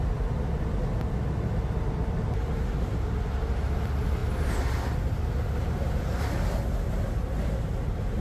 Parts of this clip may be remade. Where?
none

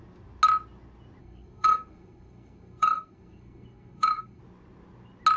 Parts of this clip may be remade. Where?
1.2-4.4